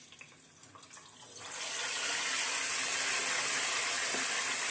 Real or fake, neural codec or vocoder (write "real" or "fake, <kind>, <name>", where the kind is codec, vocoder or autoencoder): real